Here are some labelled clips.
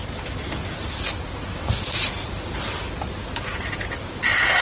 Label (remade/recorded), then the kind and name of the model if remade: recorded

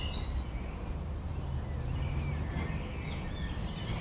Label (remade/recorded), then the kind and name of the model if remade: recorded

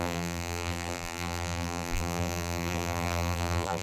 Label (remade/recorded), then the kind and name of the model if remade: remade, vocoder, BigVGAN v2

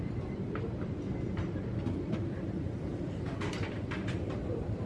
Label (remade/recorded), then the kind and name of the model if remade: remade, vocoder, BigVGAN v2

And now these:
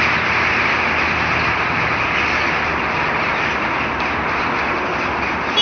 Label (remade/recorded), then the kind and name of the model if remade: recorded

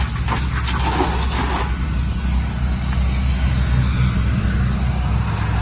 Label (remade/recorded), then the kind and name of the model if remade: recorded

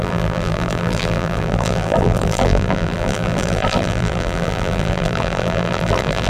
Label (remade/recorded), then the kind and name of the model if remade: remade, vocoder, BigVGAN v2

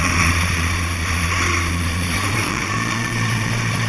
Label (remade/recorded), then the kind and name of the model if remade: remade, vocoder, Vocos